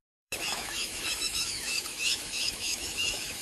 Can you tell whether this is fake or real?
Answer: fake